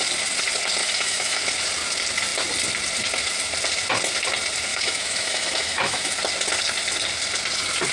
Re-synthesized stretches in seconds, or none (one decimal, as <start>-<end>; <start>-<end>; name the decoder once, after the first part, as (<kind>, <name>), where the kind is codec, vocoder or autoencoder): 0.8-1.4 (autoencoder, DAC-VAE); 4.7-6.1